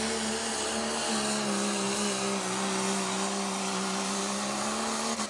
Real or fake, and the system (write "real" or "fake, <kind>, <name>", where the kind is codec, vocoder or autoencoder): real